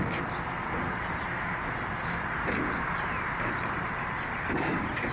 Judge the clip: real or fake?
real